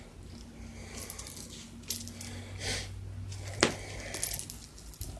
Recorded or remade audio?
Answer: recorded